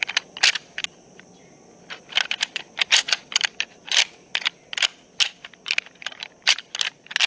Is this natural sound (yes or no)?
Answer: yes